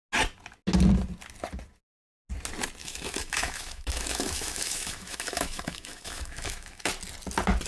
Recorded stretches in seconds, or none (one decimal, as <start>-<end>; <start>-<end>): 0.0-2.8; 6.9-7.7